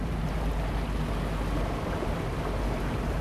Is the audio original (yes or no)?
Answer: yes